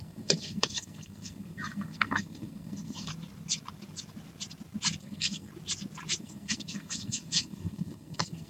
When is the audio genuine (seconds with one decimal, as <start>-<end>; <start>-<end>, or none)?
3.1-5.0; 5.5-6.2